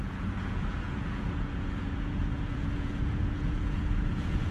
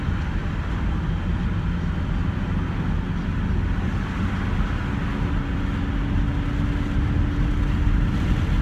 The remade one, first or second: first